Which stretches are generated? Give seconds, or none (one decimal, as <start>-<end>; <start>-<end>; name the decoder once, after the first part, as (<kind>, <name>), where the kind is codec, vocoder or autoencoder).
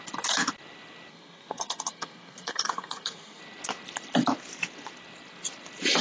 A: 1.1-3.4 (codec, SNAC)